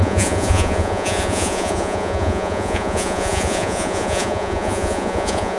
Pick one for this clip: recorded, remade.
remade